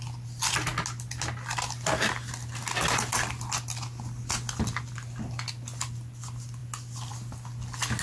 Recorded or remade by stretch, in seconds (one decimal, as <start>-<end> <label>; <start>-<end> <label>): 0.0-8.0 recorded

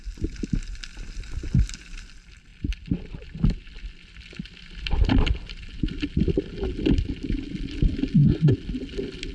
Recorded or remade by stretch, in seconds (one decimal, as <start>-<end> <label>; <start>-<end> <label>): 0.0-2.5 recorded; 2.5-3.1 remade; 3.1-9.3 recorded

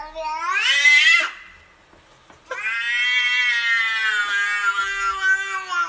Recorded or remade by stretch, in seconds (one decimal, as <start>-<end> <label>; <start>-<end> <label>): 0.0-5.9 recorded